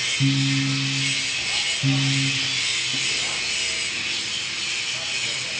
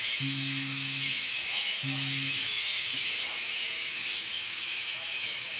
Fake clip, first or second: second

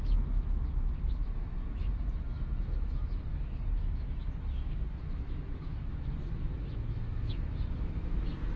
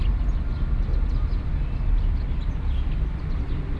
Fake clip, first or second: first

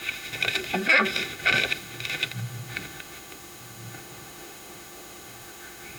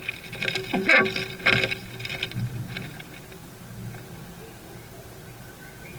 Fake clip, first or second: first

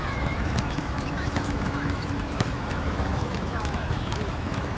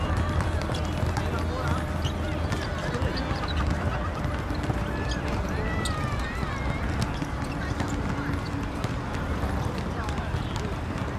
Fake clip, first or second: first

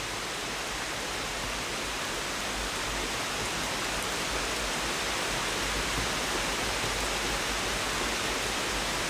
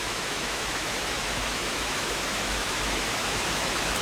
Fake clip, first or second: second